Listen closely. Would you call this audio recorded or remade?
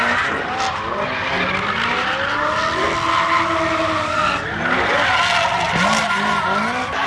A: recorded